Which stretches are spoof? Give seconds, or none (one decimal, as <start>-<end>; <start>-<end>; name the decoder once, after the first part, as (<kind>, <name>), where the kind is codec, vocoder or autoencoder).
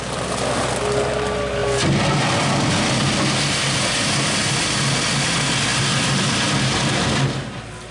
none